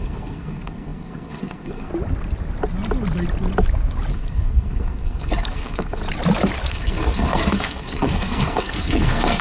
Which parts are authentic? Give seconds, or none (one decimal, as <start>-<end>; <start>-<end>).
1.9-4.1; 6.0-6.7